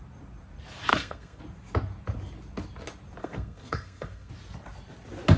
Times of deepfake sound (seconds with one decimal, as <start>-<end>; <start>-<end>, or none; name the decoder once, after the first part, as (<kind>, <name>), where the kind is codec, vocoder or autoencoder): 0.9-1.4 (codec, SNAC); 3.2-4.3